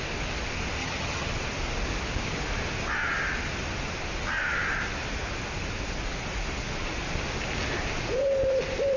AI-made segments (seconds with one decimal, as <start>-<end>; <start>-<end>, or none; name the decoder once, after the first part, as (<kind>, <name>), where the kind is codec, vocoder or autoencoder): 0.8-1.3 (vocoder, HiFi-GAN)